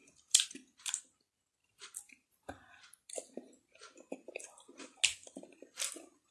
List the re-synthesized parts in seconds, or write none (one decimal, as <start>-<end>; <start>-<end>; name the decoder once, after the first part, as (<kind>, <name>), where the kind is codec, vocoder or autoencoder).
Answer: 0.0-0.8 (vocoder, BigVGAN v2); 1.6-4.8